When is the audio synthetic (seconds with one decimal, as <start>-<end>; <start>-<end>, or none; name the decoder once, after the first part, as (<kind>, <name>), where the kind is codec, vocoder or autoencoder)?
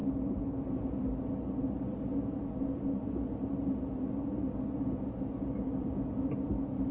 none